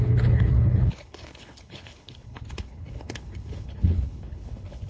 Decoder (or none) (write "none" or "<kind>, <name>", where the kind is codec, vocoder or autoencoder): codec, HILCodec